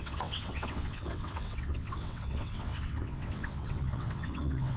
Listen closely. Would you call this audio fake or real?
fake